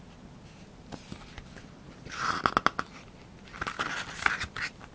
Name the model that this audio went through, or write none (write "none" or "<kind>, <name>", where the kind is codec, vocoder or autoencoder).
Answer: none